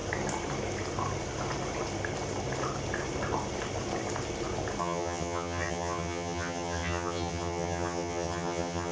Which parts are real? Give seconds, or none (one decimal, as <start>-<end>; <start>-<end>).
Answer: 0.0-4.8